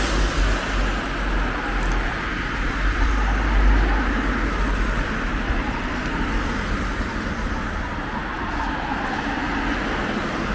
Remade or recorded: recorded